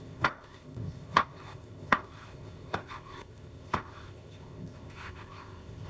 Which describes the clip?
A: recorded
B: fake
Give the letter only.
B